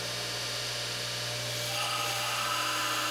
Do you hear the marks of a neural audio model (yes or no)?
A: no